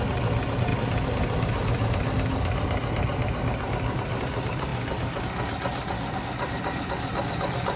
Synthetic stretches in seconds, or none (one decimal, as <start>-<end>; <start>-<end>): none